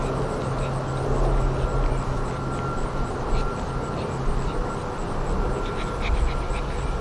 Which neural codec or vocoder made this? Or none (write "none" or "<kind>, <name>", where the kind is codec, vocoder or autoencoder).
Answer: none